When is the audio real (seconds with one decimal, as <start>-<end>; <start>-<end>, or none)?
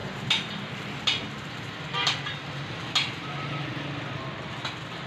0.0-5.1